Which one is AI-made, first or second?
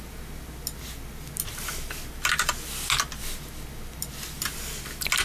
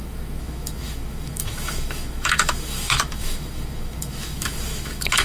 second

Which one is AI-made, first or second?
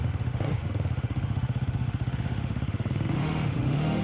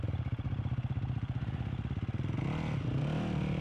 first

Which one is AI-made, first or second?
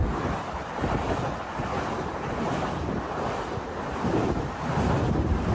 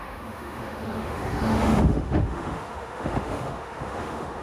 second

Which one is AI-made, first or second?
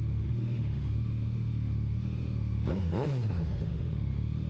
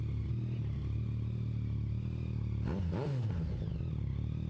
first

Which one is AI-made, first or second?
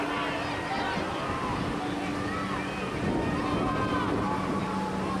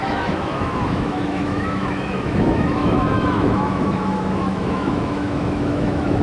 second